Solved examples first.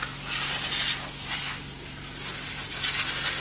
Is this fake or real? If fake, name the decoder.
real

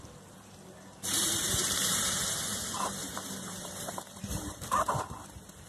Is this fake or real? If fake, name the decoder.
fake, vocoder, BigVGAN v2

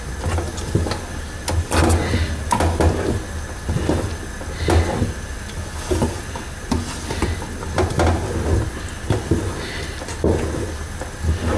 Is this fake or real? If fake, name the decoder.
real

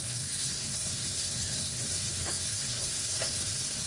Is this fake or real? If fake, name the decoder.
fake, codec, SNAC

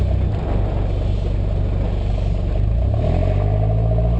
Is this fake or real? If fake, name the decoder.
real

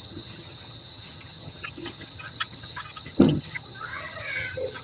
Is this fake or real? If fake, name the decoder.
fake, vocoder, HiFi-GAN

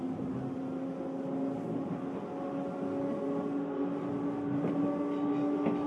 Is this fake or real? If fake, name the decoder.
real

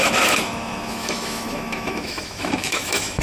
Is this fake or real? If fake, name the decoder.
fake, autoencoder, DAC-VAE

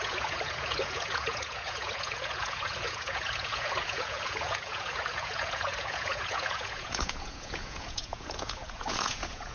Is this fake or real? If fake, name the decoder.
fake, vocoder, Vocos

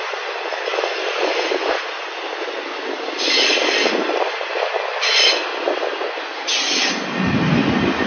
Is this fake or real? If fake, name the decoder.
real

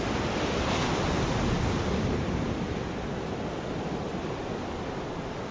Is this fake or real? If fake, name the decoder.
real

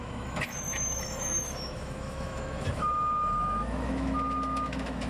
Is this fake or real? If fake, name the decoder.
fake, autoencoder, DAC-VAE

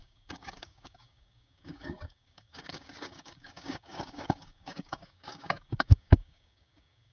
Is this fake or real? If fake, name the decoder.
fake, codec, DAC